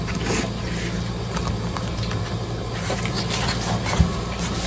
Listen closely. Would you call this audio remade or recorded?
recorded